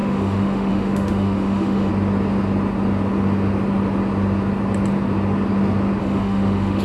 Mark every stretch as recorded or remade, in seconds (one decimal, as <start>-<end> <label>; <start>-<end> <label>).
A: 0.0-1.9 remade; 1.9-6.0 recorded; 6.0-6.8 remade